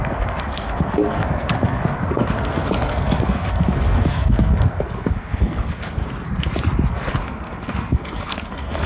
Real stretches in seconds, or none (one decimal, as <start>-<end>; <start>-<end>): 6.0-6.9